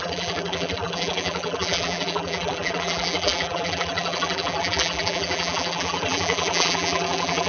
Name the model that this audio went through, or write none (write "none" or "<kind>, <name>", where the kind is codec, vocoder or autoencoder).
vocoder, BigVGAN v2